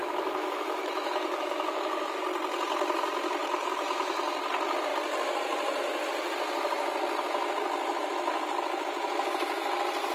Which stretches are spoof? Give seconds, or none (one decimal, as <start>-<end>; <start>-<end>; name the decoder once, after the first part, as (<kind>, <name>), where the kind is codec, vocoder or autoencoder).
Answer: 0.0-2.2 (autoencoder, DAC-VAE); 3.4-4.2